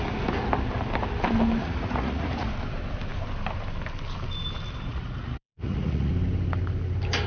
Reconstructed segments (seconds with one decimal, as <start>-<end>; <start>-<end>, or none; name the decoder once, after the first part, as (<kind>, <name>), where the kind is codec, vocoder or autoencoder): 1.6-2.5 (vocoder, Vocos); 4.9-6.1